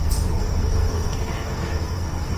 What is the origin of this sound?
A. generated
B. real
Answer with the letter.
A